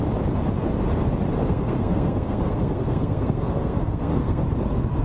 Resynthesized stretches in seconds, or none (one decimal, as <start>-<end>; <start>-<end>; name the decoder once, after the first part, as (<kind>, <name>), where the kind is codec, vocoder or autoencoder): 1.4-4.4 (codec, SNAC)